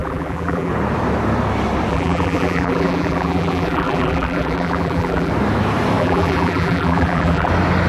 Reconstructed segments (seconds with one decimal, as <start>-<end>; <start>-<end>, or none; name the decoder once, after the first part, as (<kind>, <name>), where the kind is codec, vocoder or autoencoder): 0.0-0.7 (vocoder, BigVGAN v2); 1.9-5.3; 6.0-7.5